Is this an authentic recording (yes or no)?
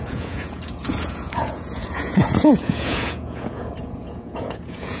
no